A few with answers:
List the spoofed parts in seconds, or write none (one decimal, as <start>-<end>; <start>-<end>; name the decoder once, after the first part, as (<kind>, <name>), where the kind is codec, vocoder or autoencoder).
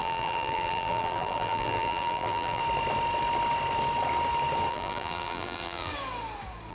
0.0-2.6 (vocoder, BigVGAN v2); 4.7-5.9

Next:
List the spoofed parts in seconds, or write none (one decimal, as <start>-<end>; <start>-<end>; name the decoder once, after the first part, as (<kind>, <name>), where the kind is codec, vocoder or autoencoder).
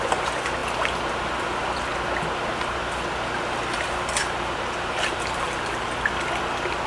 4.2-5.9 (vocoder, BigVGAN v2)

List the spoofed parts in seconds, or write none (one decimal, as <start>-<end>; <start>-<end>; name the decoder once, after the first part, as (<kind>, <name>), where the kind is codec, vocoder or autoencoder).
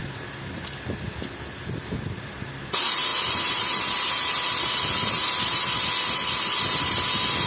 3.1-5.6 (vocoder, BigVGAN v2)